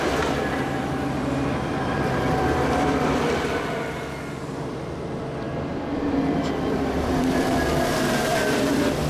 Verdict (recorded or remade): remade